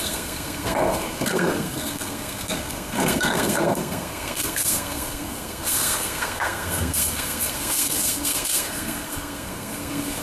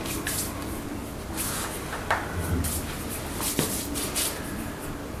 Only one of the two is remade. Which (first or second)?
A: first